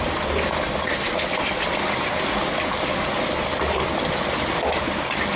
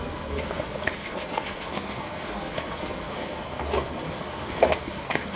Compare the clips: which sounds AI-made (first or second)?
second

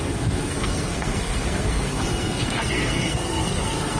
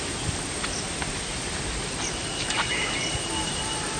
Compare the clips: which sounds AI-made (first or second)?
first